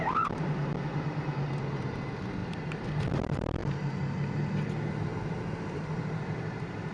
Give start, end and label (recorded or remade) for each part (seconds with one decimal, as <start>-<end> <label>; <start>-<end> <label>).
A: 0.0-0.7 remade; 0.7-1.7 recorded; 1.7-3.6 remade; 3.6-5.7 recorded; 5.7-6.9 remade